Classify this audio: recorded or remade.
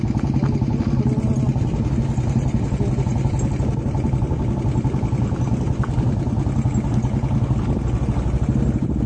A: recorded